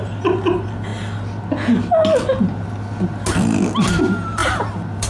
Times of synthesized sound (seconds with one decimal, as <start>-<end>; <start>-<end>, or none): 4.4-5.1